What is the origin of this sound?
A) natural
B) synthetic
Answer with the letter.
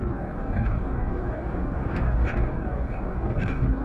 B